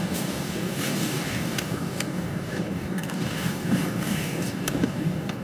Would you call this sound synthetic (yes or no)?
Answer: yes